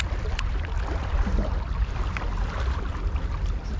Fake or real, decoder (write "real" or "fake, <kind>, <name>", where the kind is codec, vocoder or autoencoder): real